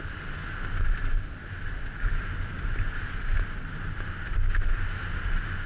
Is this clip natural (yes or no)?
yes